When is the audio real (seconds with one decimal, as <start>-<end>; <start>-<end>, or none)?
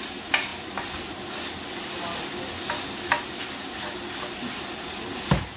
0.0-5.6